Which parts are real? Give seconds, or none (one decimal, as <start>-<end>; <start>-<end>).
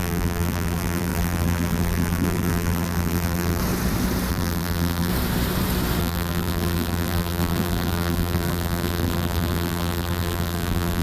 3.6-4.3; 5.1-6.0